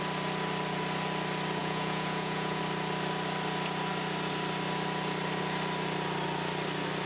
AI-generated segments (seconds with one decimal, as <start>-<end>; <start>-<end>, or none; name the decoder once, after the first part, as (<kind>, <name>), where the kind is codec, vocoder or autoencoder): 1.6-2.6 (vocoder, Vocos)